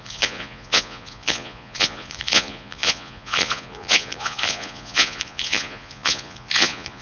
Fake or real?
fake